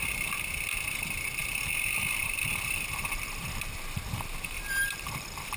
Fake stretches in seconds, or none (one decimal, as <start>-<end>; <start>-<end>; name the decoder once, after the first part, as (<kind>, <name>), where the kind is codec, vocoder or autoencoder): none